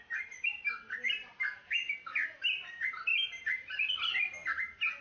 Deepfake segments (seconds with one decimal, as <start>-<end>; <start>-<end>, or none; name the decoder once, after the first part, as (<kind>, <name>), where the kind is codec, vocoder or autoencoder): 3.1-3.9 (vocoder, BigVGAN v2)